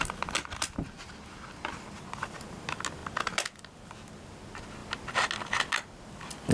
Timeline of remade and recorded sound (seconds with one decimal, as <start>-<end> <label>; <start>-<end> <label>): 0.0-6.5 recorded